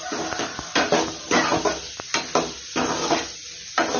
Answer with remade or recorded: recorded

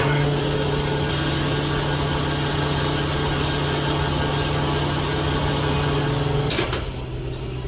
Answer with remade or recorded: recorded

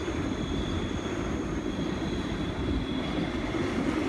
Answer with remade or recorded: recorded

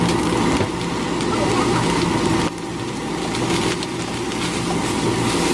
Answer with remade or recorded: recorded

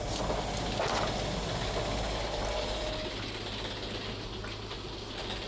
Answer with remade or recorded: recorded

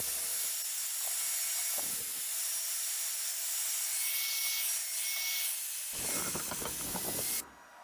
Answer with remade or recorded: recorded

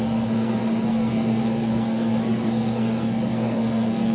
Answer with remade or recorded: remade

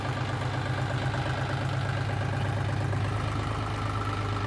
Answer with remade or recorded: recorded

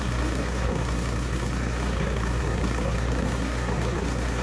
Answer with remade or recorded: remade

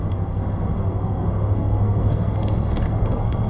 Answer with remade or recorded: remade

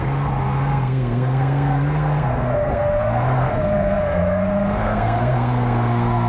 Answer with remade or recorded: remade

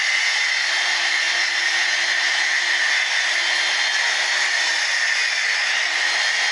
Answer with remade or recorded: recorded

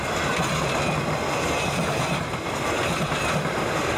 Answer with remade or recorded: recorded